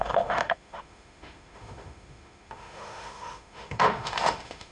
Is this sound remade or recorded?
remade